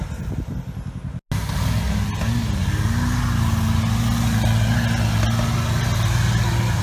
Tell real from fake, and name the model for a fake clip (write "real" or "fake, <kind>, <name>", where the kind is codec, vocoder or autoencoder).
real